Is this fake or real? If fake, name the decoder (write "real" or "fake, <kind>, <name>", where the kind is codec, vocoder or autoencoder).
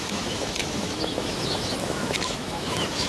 fake, autoencoder, DAC-VAE